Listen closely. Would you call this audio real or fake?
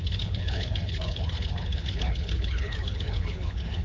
fake